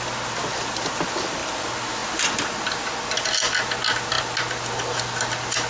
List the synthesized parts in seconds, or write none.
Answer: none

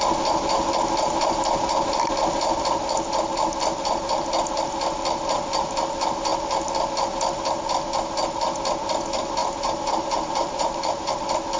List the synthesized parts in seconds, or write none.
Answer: 9.4-11.1 (vocoder, BigVGAN v2)

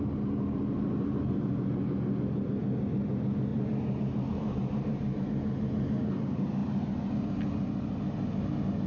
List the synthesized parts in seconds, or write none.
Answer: 3.5-5.2 (vocoder, BigVGAN v2)

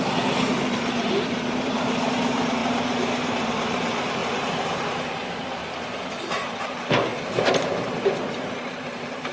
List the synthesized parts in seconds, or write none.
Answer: 0.0-5.6 (vocoder, BigVGAN v2); 6.5-7.1; 8.1-9.3

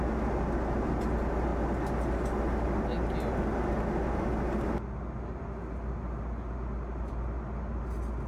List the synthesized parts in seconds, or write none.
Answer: none

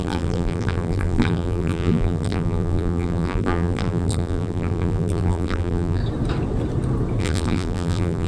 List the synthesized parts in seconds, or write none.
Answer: 0.0-6.0 (vocoder, BigVGAN v2); 7.2-8.3

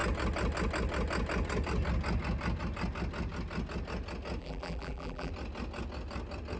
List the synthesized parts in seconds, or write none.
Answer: 4.4-5.3 (vocoder, BigVGAN v2)

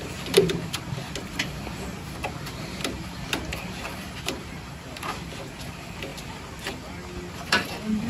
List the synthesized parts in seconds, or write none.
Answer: 0.0-6.1 (vocoder, BigVGAN v2); 7.3-8.1